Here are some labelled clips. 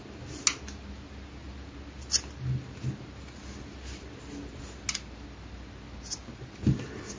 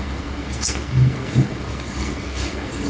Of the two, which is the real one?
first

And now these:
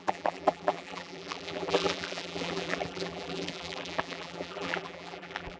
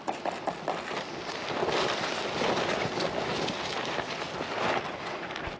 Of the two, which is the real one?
second